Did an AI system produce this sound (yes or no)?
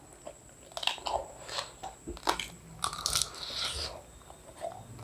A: no